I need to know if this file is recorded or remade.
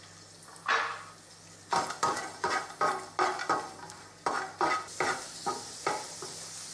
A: recorded